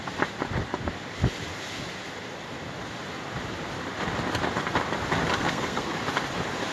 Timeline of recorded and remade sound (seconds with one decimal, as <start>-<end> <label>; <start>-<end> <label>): 0.0-5.4 recorded; 5.4-6.0 remade; 6.0-6.7 recorded